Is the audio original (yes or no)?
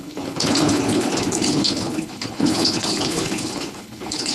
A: no